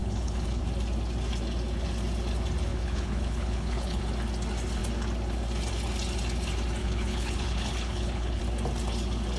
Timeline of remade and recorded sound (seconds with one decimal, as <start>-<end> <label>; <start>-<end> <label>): 0.0-0.6 remade; 0.6-2.7 recorded; 2.7-4.0 remade; 4.0-6.8 recorded; 6.8-8.4 remade; 8.4-9.4 recorded